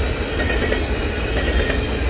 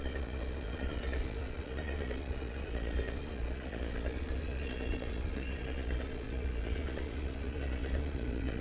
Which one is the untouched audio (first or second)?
first